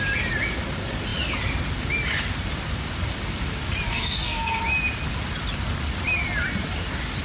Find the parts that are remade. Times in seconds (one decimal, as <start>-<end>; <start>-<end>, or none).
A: 3.9-4.6